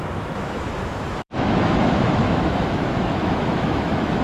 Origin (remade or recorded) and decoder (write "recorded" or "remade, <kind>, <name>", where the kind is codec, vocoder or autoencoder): remade, autoencoder, DAC-VAE